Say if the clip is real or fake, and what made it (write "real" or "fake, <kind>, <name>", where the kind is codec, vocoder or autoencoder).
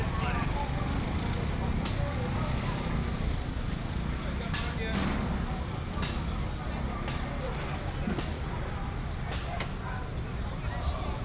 real